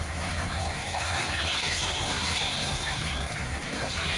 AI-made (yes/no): yes